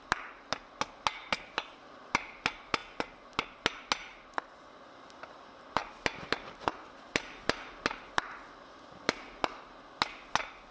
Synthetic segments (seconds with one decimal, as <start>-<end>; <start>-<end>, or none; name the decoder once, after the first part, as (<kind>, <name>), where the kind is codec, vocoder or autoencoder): none